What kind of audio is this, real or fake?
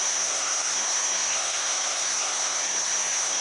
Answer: fake